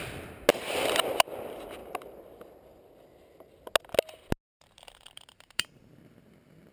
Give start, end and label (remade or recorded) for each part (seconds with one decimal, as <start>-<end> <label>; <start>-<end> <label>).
0.0-1.8 recorded; 1.8-2.4 remade; 2.4-4.5 recorded; 4.5-5.8 remade; 5.8-6.7 recorded

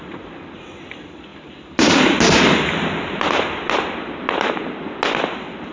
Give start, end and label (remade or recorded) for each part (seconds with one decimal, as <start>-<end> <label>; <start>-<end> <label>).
0.0-5.7 recorded

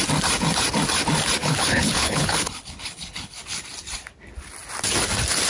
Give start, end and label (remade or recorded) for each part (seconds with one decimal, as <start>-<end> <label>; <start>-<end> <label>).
0.0-1.4 recorded; 1.4-3.4 remade; 3.4-5.5 recorded